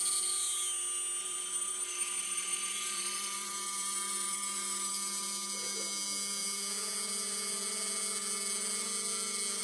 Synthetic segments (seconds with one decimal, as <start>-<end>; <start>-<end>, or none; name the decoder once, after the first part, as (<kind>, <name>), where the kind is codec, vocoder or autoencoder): 1.2-4.9 (vocoder, BigVGAN v2)